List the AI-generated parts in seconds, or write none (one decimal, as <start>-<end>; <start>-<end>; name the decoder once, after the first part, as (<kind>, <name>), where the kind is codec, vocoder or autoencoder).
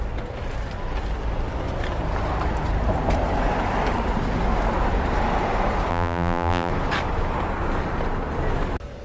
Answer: 5.9-6.7 (vocoder, BigVGAN v2)